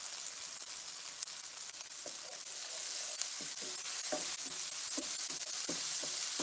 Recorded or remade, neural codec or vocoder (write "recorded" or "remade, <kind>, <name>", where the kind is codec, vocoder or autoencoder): recorded